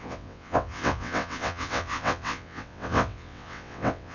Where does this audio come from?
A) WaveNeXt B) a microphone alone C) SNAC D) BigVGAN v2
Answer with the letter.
A